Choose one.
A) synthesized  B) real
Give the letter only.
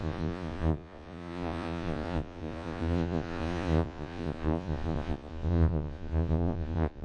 A